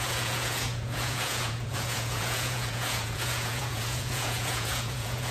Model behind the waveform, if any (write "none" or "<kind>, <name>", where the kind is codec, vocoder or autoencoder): vocoder, Vocos